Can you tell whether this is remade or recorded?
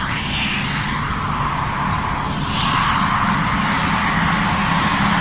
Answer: recorded